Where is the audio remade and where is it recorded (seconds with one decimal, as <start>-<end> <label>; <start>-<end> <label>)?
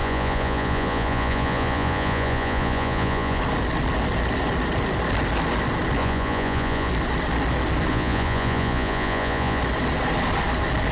0.0-3.4 remade; 3.4-6.0 recorded; 6.0-6.9 remade; 6.9-7.9 recorded; 7.9-9.6 remade; 9.6-10.9 recorded